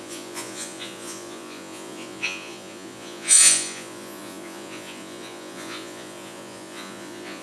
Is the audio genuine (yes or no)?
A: no